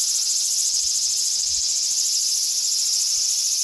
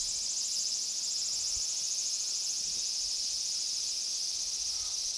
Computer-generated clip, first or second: first